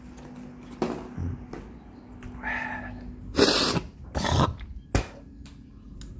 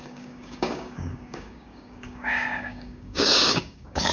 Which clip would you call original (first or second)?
first